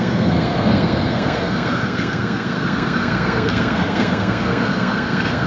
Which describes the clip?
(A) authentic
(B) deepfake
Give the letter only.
B